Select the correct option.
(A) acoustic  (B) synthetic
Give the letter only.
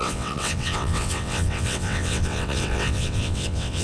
B